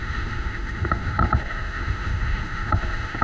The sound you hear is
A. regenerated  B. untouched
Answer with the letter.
A